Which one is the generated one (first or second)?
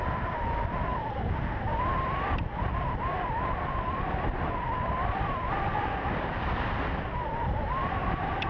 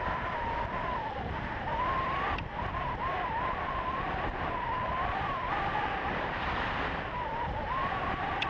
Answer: second